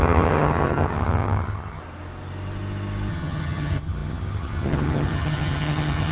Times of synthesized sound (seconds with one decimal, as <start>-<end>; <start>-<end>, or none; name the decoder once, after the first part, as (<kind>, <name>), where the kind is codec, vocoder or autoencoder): 0.0-1.8 (vocoder, HiFi-GAN); 3.1-6.1